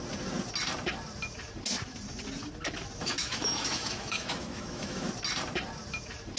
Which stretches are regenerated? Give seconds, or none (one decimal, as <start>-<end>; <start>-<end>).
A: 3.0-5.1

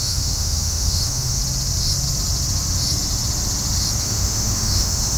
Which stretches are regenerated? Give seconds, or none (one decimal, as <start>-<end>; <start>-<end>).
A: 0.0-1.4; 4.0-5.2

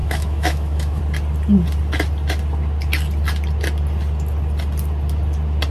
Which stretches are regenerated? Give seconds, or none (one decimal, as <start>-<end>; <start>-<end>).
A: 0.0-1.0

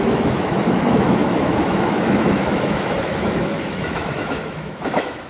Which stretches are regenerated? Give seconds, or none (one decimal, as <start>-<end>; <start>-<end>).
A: 0.0-5.3